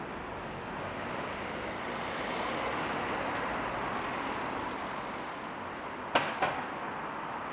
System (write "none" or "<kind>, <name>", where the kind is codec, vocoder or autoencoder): none